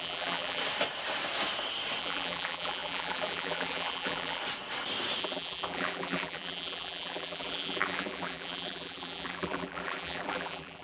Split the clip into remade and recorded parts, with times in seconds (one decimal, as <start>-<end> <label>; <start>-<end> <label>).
0.0-0.6 remade; 0.6-2.0 recorded; 2.0-4.4 remade; 4.4-5.2 recorded; 5.2-10.8 remade